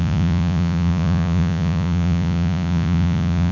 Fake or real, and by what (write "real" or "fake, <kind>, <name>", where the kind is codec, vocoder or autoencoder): fake, vocoder, Vocos